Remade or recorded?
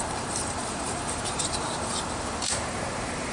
remade